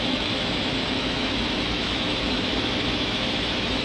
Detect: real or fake fake